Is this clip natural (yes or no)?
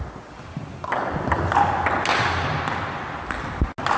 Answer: yes